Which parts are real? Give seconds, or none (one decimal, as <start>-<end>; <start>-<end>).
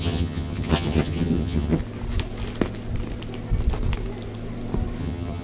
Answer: 1.8-5.0